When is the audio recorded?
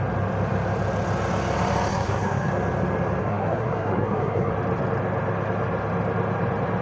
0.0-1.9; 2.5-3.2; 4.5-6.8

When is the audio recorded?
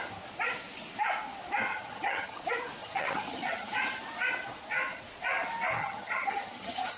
0.0-1.7; 2.4-2.8; 3.7-5.8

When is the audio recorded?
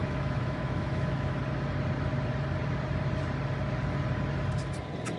1.4-5.2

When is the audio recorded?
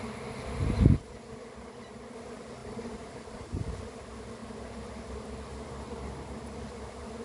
0.0-2.6; 3.1-7.2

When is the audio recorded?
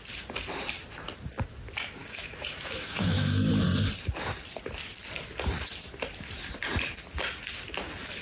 0.0-2.0; 3.5-8.2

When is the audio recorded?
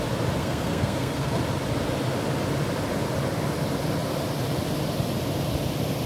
0.0-0.4; 1.4-6.1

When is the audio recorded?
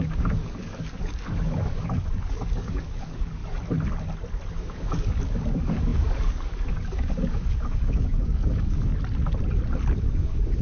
3.4-4.5; 8.9-10.0